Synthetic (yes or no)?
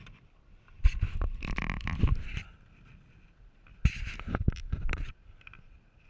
no